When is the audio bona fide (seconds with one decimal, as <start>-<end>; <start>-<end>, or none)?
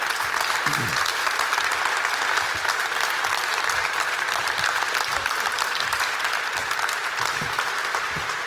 0.0-8.5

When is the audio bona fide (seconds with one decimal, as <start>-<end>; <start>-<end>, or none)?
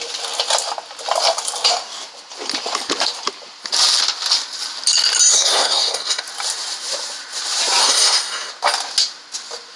0.0-5.3; 6.2-7.8; 8.5-9.8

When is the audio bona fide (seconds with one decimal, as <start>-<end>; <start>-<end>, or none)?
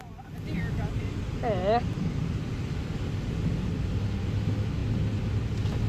0.0-5.9